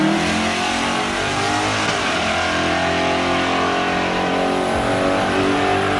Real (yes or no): yes